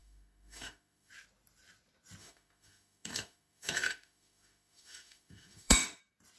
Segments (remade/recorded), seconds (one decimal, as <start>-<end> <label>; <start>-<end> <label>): 0.0-1.1 remade; 1.1-2.2 recorded; 2.2-6.0 remade; 6.0-6.4 recorded